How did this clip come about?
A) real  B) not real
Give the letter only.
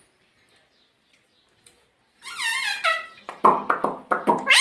A